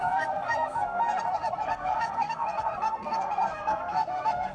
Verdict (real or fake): fake